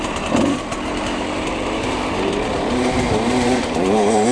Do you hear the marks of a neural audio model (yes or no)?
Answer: yes